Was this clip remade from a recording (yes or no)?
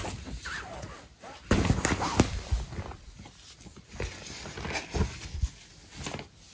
no